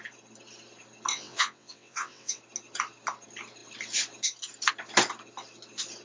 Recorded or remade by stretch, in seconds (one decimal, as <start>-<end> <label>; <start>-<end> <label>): 0.0-1.1 recorded; 1.1-2.4 remade; 2.4-6.0 recorded